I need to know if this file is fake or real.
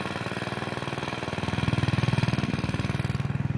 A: real